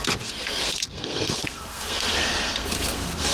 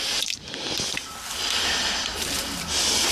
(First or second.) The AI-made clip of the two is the first